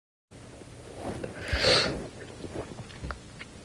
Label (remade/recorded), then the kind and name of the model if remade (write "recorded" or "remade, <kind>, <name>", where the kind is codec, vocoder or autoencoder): recorded